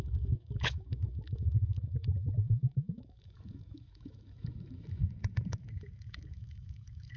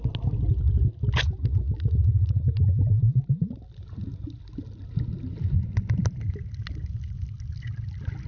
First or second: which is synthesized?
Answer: first